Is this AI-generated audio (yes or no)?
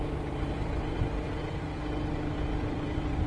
yes